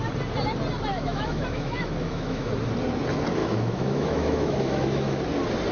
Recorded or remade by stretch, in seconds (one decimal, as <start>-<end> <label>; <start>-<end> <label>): 0.0-0.9 recorded; 0.9-2.5 remade; 2.5-3.4 recorded; 3.4-5.2 remade; 5.2-5.7 recorded